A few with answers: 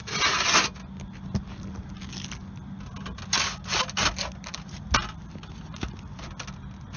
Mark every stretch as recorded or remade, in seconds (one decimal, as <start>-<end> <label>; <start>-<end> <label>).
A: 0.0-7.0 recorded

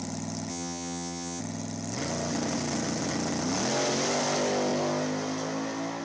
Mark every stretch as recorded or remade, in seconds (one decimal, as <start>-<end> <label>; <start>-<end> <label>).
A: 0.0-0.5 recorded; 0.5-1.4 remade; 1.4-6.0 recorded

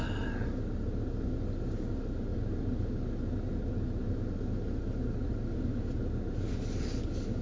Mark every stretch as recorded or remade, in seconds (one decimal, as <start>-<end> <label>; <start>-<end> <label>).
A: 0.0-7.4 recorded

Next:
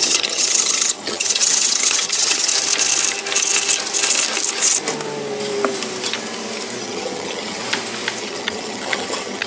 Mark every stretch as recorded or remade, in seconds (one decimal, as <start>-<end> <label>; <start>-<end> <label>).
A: 0.0-2.5 remade; 2.5-6.8 recorded; 6.8-7.6 remade; 7.6-8.2 recorded; 8.2-9.5 remade

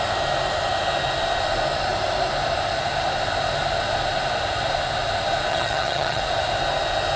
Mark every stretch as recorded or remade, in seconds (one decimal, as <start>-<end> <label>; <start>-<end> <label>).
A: 0.0-5.5 recorded; 5.5-6.2 remade; 6.2-7.2 recorded

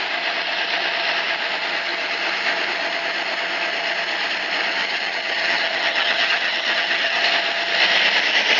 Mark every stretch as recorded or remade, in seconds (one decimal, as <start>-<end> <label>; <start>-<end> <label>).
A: 0.0-4.8 recorded; 4.8-7.2 remade; 7.2-8.6 recorded